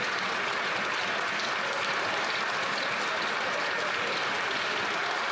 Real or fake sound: real